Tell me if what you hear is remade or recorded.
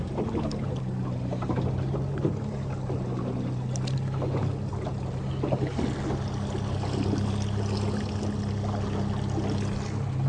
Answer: recorded